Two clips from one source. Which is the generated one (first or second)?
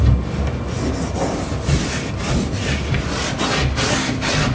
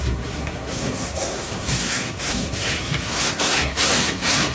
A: second